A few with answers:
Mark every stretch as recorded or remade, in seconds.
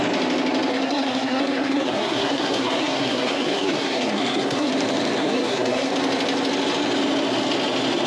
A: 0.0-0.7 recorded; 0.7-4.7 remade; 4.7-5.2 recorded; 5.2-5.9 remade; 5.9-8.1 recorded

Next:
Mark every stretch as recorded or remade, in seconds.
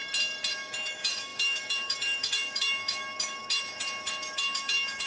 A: 0.0-0.5 recorded; 0.5-5.1 remade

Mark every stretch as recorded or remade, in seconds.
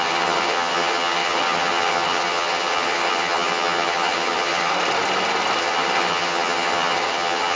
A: 0.0-4.7 remade; 4.7-5.6 recorded; 5.6-7.6 remade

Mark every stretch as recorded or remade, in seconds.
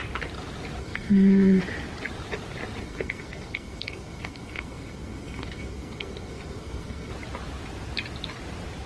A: 0.0-0.8 recorded; 0.8-1.6 remade; 1.6-2.8 recorded; 2.8-7.1 remade; 7.1-8.9 recorded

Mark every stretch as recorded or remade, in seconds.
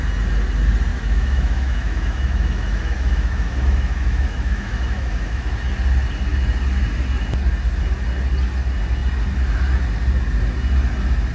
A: 0.0-0.9 recorded; 0.9-5.6 remade; 5.6-11.3 recorded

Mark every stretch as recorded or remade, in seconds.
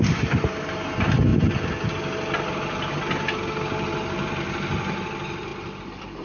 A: 0.0-6.2 recorded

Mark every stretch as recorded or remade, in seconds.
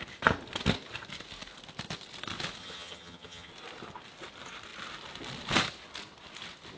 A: 0.0-2.6 recorded; 2.6-3.5 remade; 3.5-6.8 recorded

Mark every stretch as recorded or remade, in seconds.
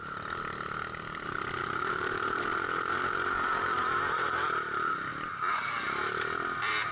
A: 0.0-1.6 recorded; 1.6-5.1 remade; 5.1-6.9 recorded